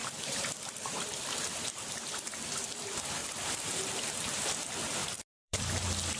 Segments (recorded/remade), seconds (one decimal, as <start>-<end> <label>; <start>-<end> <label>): 0.0-1.6 remade; 1.6-3.2 recorded; 3.2-4.4 remade; 4.4-5.0 recorded; 5.0-5.6 remade; 5.6-6.2 recorded

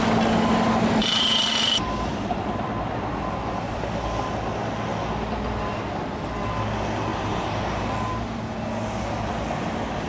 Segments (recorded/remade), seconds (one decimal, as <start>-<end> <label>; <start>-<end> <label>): 0.0-1.0 recorded; 1.0-2.7 remade; 2.7-7.1 recorded; 7.1-8.4 remade; 8.4-10.1 recorded

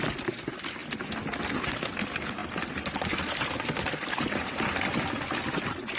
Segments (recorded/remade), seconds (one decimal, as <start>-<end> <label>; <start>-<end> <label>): 0.0-2.4 recorded; 2.4-6.0 remade

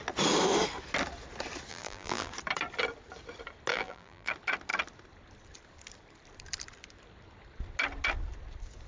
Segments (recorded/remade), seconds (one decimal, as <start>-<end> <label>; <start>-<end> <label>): 0.0-1.7 recorded; 1.7-2.3 remade; 2.3-3.7 recorded; 3.7-4.3 remade; 4.3-8.9 recorded

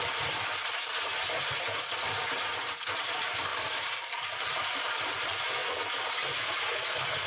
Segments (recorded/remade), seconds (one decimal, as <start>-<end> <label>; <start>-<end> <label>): 0.0-0.6 remade; 0.6-2.3 recorded; 2.3-5.6 remade; 5.6-7.3 recorded

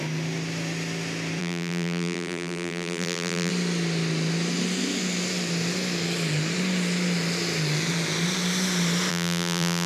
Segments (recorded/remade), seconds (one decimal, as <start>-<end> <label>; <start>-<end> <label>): 0.0-1.4 recorded; 1.4-3.5 remade; 3.5-9.1 recorded; 9.1-9.9 remade

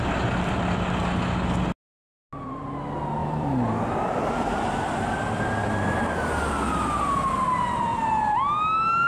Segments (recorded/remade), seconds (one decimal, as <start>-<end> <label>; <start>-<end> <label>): 0.0-3.2 recorded; 3.2-4.6 remade; 4.6-9.1 recorded